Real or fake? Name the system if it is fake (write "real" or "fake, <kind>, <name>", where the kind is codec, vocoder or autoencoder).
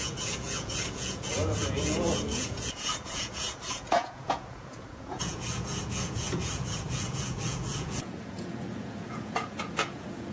fake, vocoder, Vocos